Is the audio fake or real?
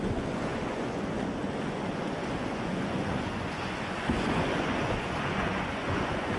fake